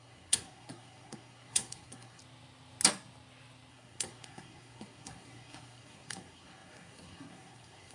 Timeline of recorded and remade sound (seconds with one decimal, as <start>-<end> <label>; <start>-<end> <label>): 0.0-2.2 remade; 2.2-3.7 recorded; 3.7-7.9 remade